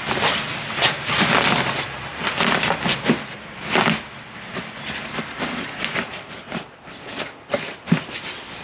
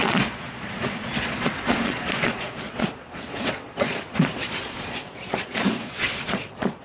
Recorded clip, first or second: first